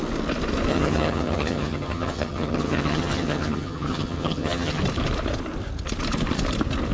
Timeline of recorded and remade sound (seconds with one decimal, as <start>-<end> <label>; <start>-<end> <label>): 0.0-0.7 recorded; 0.7-4.8 remade; 4.8-6.9 recorded